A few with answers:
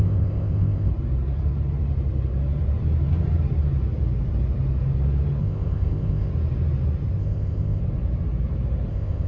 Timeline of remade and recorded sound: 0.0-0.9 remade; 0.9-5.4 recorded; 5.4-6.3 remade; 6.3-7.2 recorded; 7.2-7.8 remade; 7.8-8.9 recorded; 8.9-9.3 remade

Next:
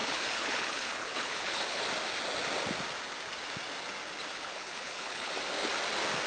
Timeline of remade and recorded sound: 0.0-1.8 remade; 1.8-4.3 recorded; 4.3-5.3 remade; 5.3-6.3 recorded

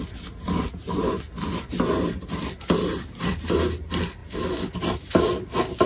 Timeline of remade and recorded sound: 0.0-5.9 recorded

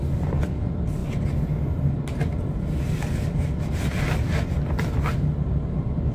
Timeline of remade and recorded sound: 0.0-6.1 recorded